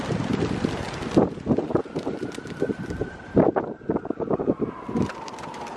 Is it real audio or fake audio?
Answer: real